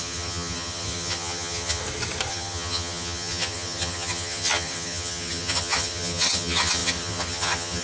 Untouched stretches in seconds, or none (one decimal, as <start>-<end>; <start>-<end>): 1.8-2.3